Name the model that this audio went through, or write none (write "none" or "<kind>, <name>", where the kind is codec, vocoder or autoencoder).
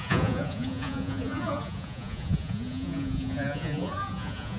vocoder, Vocos